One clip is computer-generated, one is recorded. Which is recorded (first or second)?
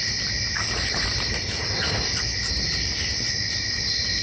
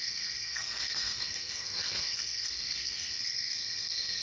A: first